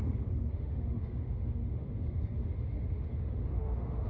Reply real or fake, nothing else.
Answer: fake